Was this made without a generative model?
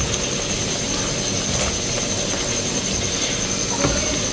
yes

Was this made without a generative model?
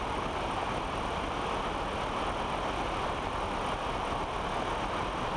yes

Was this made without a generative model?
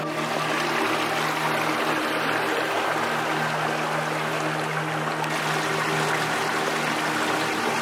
yes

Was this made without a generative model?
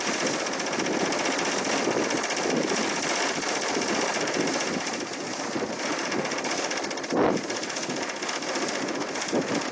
yes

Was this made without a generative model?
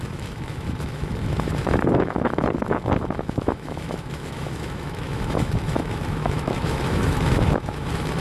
no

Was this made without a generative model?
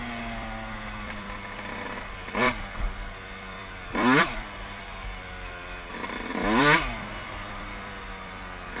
no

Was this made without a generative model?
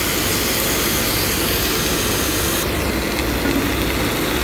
yes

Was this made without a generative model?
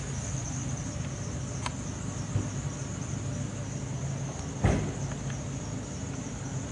yes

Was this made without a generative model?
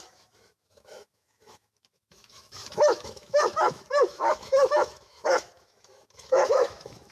no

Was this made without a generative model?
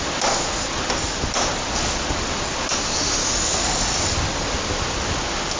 yes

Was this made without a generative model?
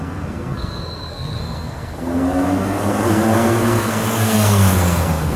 no